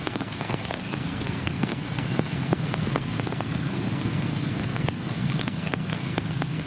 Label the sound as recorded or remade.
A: remade